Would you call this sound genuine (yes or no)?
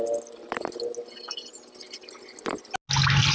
yes